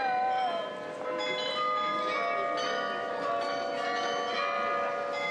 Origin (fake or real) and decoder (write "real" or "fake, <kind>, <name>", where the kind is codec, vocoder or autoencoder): real